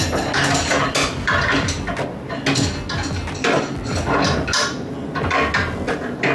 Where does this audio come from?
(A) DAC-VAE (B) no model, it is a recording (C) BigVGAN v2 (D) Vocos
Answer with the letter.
B